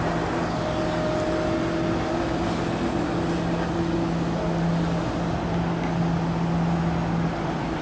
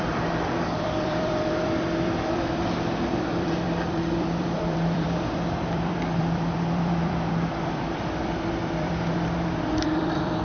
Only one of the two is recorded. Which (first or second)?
first